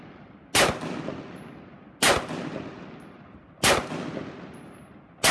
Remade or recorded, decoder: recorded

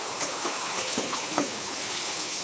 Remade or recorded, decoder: remade, codec, HILCodec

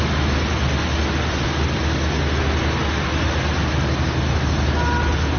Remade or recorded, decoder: recorded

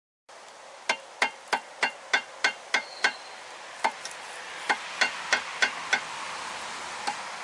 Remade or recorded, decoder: recorded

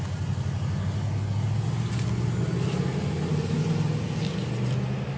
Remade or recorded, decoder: recorded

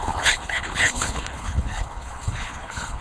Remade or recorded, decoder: remade, codec, HILCodec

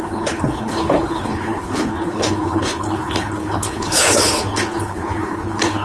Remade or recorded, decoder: remade, codec, HILCodec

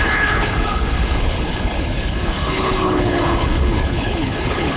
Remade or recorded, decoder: remade, codec, HILCodec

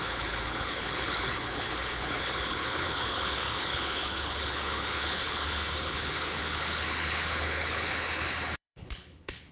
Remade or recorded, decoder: remade, codec, HILCodec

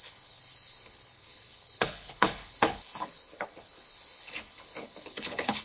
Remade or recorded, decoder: remade, codec, HILCodec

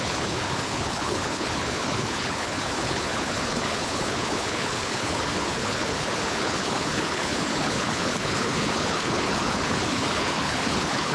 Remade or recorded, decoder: remade, codec, HILCodec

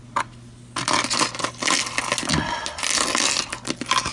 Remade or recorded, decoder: recorded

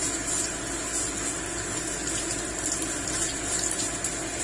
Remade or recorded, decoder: recorded